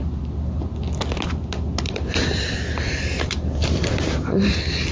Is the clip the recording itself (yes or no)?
no